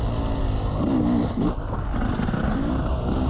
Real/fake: real